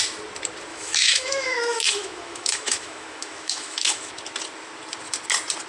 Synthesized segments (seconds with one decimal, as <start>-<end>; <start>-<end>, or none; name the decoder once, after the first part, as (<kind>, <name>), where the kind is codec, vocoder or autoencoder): 0.7-4.1 (autoencoder, DAC-VAE)